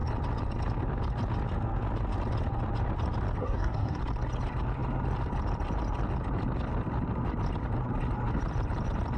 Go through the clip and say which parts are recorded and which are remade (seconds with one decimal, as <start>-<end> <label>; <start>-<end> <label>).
0.0-3.4 recorded; 3.4-4.0 remade; 4.0-9.2 recorded